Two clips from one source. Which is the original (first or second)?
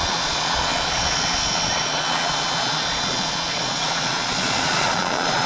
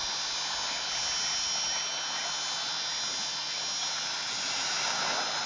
second